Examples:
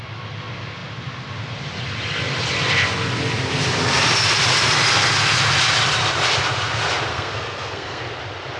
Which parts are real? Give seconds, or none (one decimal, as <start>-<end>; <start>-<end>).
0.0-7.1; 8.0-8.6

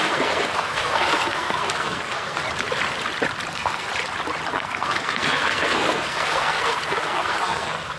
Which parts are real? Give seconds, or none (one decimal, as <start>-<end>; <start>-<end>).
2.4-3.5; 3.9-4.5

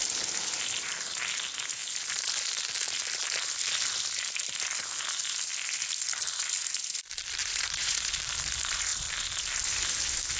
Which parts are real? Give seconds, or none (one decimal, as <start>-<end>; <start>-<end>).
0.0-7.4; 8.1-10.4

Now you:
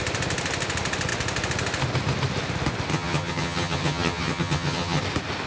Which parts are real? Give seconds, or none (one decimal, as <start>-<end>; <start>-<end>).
0.0-2.9; 5.0-5.5

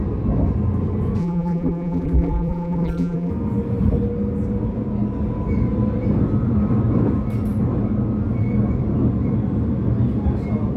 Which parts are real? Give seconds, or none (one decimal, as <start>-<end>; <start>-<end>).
0.0-1.2; 3.3-10.8

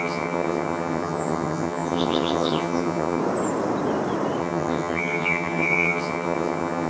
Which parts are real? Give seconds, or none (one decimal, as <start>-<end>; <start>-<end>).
3.2-4.4

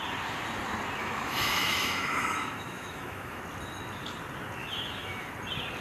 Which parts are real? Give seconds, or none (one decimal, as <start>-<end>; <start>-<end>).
0.0-1.0; 3.4-4.6; 5.3-5.8

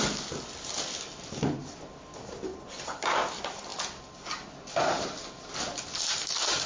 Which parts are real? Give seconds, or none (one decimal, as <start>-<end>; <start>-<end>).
0.0-6.7